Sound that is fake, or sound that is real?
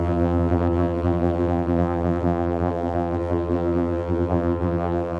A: fake